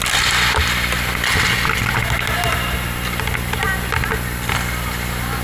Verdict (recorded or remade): recorded